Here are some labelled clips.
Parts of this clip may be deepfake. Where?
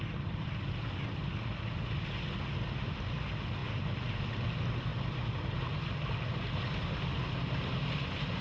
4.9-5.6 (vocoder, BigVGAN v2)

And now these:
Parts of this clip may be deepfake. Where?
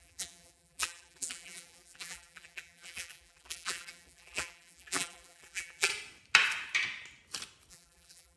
0.0-5.9 (vocoder, BigVGAN v2); 7.7-8.4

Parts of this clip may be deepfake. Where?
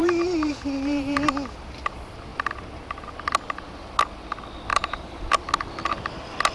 0.0-1.3 (vocoder, BigVGAN v2); 4.7-5.5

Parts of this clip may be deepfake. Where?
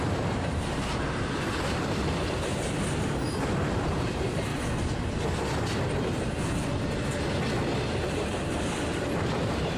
0.0-2.5 (vocoder, BigVGAN v2); 3.3-4.5; 7.8-9.8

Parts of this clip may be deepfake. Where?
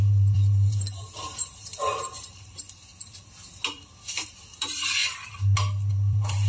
0.0-2.9 (vocoder, BigVGAN v2); 3.7-5.0; 5.9-6.5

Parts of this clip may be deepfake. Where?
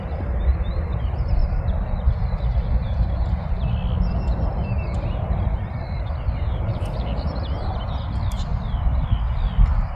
0.0-1.4 (vocoder, BigVGAN v2); 4.0-10.0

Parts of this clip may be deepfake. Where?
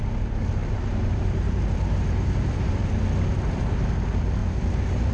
0.6-2.8 (vocoder, BigVGAN v2); 4.4-5.1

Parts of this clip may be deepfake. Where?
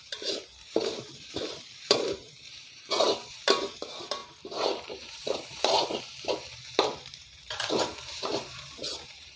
0.0-9.4 (vocoder, BigVGAN v2)